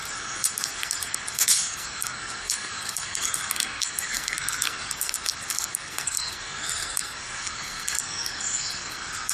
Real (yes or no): no